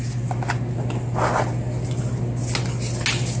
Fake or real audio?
real